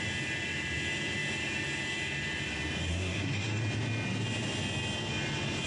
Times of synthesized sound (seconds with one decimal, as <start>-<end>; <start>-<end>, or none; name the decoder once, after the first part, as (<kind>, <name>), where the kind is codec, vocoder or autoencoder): 2.9-3.6 (codec, SNAC)